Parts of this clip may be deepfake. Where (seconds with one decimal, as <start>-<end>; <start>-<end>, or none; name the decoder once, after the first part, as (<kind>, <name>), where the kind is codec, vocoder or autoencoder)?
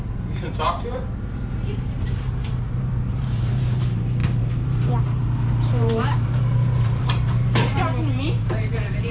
0.0-9.1 (vocoder, BigVGAN v2)